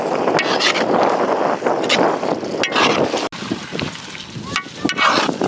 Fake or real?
real